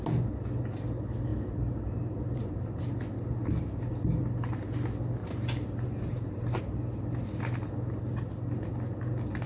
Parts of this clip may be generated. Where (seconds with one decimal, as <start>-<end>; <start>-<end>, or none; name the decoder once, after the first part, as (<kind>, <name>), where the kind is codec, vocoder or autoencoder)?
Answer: 1.3-2.8 (vocoder, BigVGAN v2); 5.2-6.6